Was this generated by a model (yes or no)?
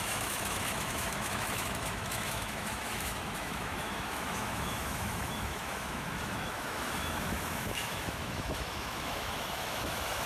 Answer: yes